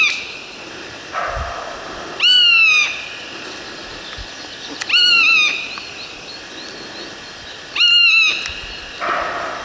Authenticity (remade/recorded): recorded